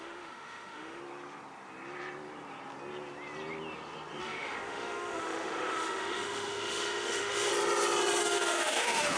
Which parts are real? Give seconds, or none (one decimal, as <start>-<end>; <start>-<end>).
1.0-4.2; 7.5-8.2